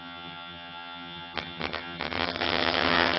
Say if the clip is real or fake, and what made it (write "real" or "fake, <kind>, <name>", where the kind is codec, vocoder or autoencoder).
fake, vocoder, HiFi-GAN